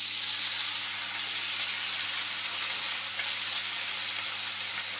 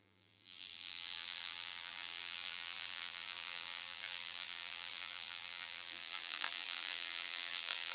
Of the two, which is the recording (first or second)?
first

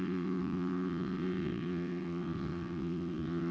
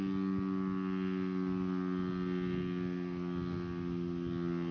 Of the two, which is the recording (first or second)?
second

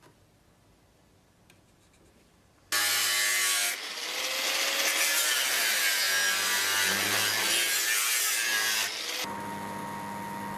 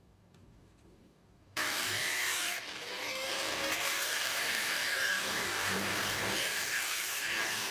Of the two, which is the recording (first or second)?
first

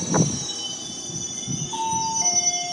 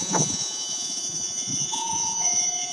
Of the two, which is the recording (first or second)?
first